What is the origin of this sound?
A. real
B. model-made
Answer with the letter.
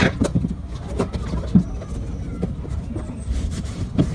A